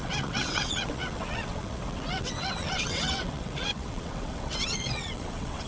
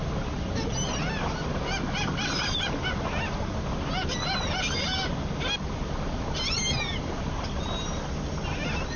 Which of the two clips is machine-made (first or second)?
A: first